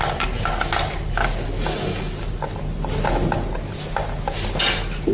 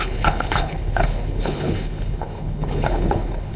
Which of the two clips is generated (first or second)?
second